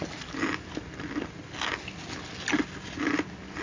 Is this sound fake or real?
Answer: real